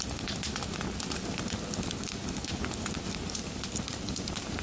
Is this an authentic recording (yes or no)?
yes